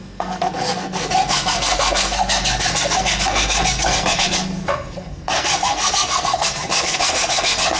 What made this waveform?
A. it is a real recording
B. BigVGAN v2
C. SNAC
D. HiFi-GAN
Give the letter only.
C